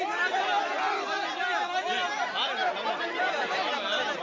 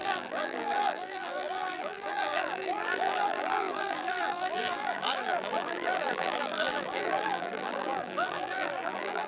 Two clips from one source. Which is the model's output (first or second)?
second